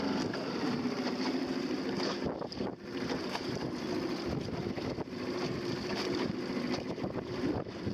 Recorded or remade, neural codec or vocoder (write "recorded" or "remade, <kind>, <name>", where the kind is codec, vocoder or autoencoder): recorded